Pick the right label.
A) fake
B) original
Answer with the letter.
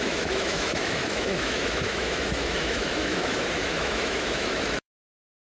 A